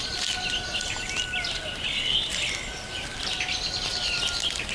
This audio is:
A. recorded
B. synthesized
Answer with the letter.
A